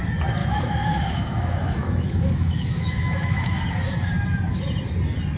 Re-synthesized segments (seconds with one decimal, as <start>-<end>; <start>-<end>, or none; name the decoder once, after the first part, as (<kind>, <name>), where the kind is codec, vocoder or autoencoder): 0.4-3.6 (autoencoder, DAC-VAE)